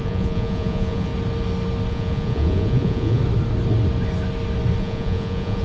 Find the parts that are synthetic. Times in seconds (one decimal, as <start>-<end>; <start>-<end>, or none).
0.0-1.1; 1.9-3.2; 4.8-5.6